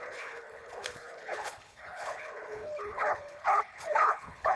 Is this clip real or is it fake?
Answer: fake